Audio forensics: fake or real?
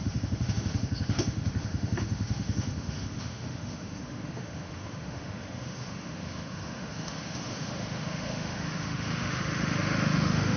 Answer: fake